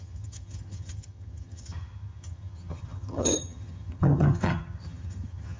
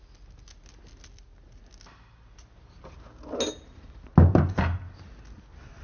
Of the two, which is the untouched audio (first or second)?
second